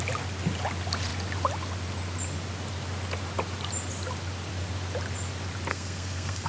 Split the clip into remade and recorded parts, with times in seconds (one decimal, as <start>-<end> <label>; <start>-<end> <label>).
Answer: 0.0-5.7 recorded; 5.7-6.5 remade

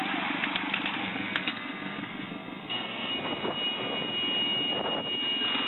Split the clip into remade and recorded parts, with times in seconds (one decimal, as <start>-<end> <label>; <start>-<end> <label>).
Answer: 0.0-1.0 recorded; 1.0-3.1 remade; 3.1-5.7 recorded